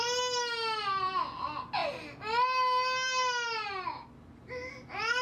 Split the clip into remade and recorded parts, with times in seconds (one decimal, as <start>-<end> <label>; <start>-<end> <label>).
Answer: 0.0-5.2 recorded